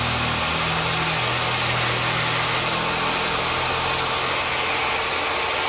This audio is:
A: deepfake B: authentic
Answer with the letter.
B